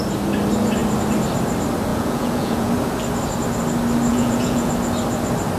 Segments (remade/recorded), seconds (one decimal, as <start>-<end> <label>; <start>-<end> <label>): 0.0-1.9 recorded; 1.9-2.7 remade; 2.7-4.1 recorded; 4.1-4.7 remade; 4.7-5.6 recorded